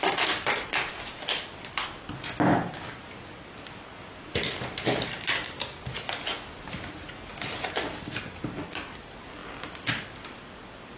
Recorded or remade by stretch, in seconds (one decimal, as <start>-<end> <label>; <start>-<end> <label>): 0.0-11.0 recorded